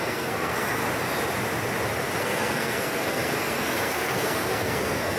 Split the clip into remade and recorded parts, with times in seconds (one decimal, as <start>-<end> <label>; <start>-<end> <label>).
0.0-0.8 remade; 0.8-2.2 recorded; 2.2-5.2 remade